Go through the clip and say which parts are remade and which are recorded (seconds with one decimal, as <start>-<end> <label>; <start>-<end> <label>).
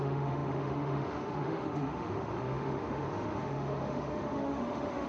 0.0-5.1 remade